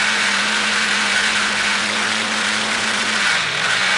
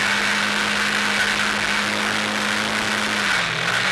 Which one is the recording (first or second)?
second